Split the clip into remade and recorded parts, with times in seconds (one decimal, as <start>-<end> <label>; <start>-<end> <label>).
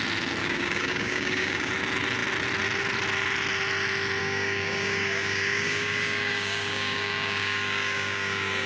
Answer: 0.0-0.4 recorded; 0.4-1.7 remade; 1.7-4.2 recorded; 4.2-8.7 remade